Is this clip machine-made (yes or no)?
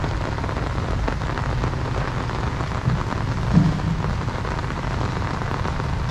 no